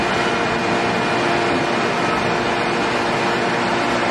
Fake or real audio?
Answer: real